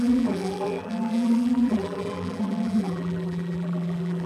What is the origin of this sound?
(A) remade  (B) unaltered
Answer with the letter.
A